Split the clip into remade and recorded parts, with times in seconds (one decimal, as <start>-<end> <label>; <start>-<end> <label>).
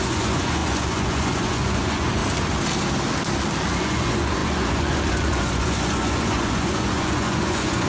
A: 0.0-2.2 remade; 2.2-3.8 recorded; 3.8-7.9 remade